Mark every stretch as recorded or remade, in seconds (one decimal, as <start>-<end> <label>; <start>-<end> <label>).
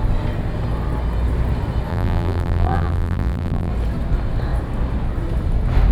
0.0-1.9 recorded; 1.9-3.7 remade; 3.7-5.9 recorded